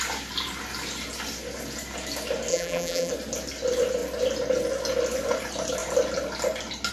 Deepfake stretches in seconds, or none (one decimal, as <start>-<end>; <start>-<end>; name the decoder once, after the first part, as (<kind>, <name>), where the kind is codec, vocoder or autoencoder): 2.5-3.1 (vocoder, BigVGAN v2)